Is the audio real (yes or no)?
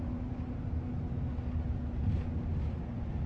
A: yes